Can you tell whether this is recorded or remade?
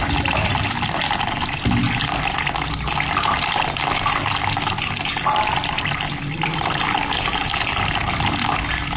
recorded